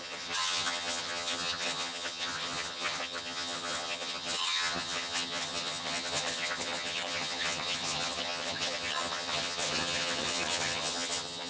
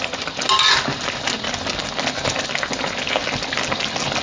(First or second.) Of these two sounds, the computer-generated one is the first